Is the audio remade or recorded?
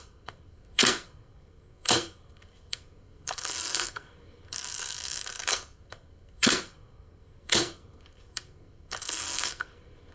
remade